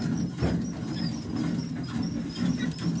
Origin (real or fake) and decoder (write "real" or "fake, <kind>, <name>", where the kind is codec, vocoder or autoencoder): real